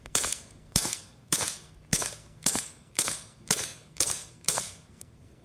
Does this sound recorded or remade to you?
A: remade